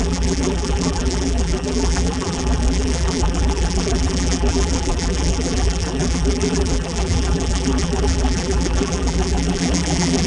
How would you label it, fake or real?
fake